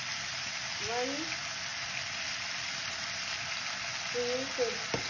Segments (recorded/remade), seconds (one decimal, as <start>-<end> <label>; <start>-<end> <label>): 0.0-5.1 recorded